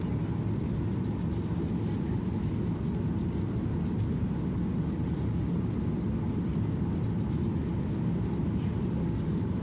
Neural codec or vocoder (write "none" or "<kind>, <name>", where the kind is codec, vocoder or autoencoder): none